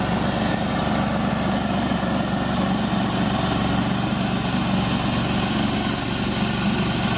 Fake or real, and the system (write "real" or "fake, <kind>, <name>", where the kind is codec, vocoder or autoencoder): real